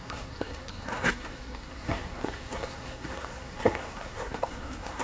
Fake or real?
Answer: fake